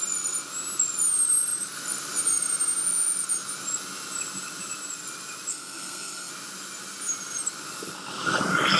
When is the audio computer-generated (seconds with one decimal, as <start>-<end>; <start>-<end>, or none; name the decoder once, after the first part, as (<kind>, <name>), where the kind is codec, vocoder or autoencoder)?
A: 5.5-6.3 (codec, SNAC)